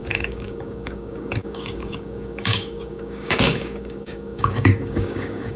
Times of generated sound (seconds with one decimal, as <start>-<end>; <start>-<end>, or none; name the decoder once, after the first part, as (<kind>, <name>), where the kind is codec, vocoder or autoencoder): 0.0-5.6 (codec, DAC)